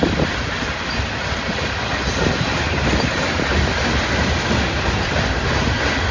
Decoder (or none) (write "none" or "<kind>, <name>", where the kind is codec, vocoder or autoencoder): none